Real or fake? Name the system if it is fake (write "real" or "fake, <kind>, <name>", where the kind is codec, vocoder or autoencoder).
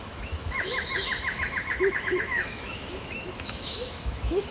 fake, autoencoder, DAC-VAE